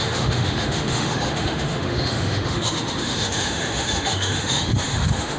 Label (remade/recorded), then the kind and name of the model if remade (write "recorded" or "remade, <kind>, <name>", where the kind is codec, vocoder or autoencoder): remade, autoencoder, DAC-VAE